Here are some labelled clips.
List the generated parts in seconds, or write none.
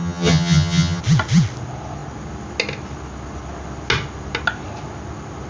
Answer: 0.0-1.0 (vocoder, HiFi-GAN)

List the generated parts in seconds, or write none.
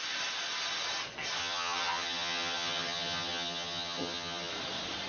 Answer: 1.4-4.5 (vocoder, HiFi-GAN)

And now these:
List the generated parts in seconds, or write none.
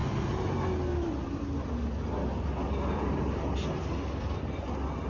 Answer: none